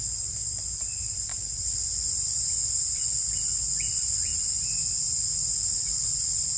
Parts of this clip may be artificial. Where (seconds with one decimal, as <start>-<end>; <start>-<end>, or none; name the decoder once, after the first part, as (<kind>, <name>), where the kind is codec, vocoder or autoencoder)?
none